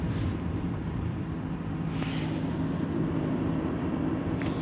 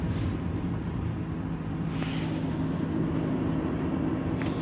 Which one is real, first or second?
second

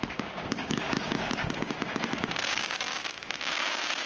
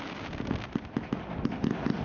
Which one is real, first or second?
second